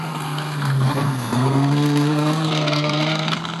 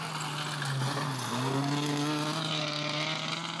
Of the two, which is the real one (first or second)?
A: second